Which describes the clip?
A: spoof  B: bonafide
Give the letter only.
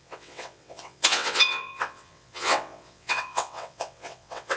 A